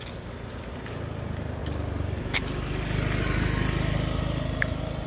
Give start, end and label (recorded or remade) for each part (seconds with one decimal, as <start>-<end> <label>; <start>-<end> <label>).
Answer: 0.0-5.1 recorded